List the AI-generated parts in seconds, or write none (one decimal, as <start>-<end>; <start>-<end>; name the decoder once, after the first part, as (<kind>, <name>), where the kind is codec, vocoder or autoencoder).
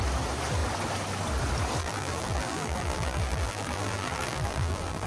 1.8-5.1 (vocoder, BigVGAN v2)